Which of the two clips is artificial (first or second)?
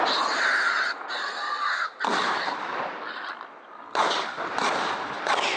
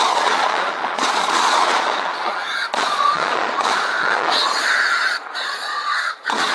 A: second